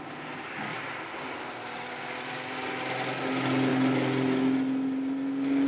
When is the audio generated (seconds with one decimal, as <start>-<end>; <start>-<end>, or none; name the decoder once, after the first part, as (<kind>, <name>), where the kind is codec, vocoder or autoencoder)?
0.7-1.5 (vocoder, BigVGAN v2)